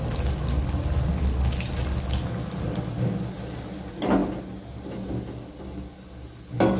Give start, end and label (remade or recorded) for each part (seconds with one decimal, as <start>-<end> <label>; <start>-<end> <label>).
0.0-6.8 recorded